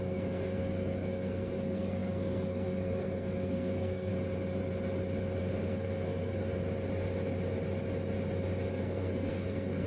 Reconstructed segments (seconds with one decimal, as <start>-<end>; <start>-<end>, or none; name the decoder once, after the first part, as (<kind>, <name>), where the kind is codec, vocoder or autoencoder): 0.0-4.1 (codec, SNAC); 5.4-6.4; 8.7-9.9

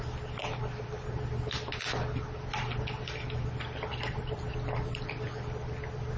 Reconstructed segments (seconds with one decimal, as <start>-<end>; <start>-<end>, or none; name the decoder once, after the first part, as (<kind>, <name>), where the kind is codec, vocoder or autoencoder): none

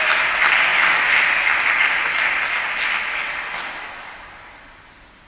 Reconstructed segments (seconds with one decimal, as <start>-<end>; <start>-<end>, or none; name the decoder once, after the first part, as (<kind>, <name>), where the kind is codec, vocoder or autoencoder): none

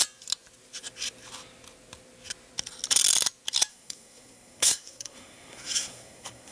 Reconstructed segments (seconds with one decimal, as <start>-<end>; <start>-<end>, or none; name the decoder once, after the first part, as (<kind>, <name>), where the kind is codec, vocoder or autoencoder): 3.7-6.5 (codec, SNAC)